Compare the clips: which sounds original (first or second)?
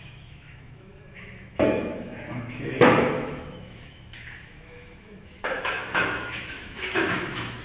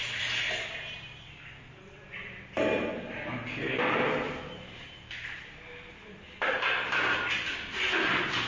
second